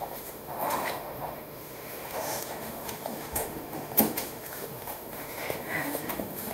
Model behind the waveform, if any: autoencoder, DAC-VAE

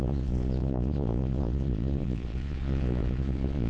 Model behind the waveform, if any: vocoder, Vocos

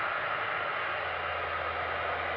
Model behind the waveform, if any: none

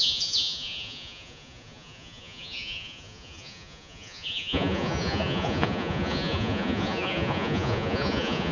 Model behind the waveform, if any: vocoder, Vocos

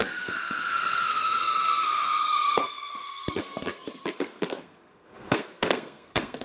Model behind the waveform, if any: codec, SNAC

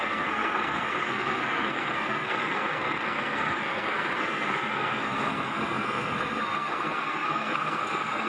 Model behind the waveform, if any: codec, SNAC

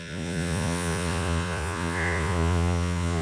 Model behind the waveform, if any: vocoder, Vocos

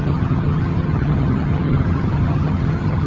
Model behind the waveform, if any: vocoder, HiFi-GAN